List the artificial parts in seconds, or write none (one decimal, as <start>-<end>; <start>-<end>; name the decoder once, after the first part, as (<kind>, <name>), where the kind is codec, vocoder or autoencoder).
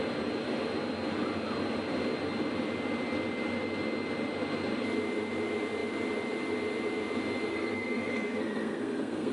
7.5-9.3 (codec, SNAC)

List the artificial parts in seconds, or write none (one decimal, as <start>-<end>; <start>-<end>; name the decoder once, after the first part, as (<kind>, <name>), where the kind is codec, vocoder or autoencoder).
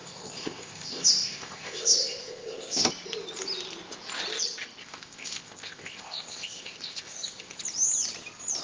0.0-2.9 (codec, ZipCodec); 4.8-7.6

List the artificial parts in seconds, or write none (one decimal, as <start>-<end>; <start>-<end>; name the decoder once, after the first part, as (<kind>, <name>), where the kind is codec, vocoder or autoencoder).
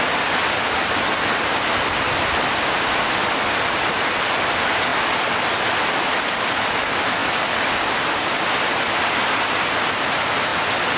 7.2-7.8 (vocoder, BigVGAN v2)